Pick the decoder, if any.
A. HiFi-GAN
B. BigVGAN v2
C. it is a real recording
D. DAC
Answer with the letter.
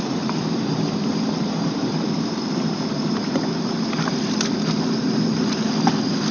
B